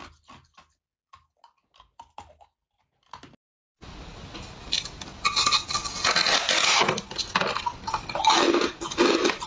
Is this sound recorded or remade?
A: recorded